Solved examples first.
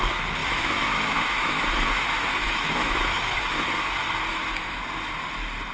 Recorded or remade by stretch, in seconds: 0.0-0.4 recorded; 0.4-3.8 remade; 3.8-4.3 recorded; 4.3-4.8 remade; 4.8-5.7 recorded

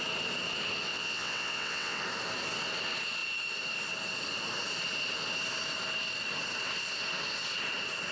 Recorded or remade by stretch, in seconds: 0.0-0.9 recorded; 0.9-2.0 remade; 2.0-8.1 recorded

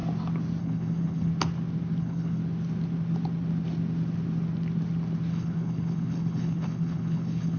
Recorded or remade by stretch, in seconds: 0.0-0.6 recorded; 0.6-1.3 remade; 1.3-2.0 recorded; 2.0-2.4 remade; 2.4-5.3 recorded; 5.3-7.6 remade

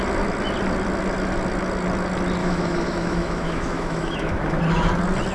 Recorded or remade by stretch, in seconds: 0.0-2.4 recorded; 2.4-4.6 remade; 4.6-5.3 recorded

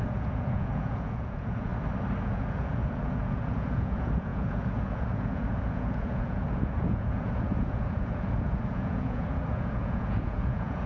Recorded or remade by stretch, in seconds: 0.0-1.7 remade; 1.7-2.2 recorded; 2.2-10.9 remade

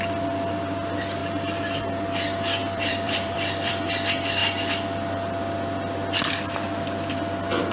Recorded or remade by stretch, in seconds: 0.0-2.6 recorded; 2.6-3.7 remade; 3.7-7.7 recorded

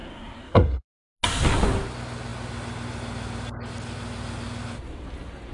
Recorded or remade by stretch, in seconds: 0.0-0.8 remade; 0.8-5.5 recorded

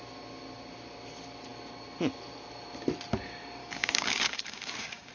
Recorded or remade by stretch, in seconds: 0.0-3.6 recorded; 3.6-5.1 remade